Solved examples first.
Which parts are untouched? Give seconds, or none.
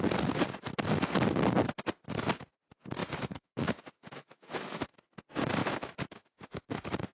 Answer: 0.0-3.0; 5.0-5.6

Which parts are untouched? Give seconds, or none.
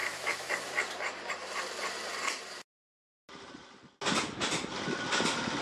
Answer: 0.5-5.6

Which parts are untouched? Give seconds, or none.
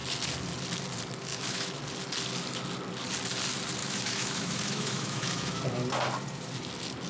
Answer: 0.0-1.3; 1.8-3.8; 5.6-7.1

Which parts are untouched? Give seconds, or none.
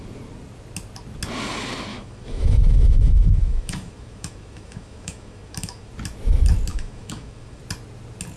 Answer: 0.0-1.9; 5.9-6.7; 7.6-8.4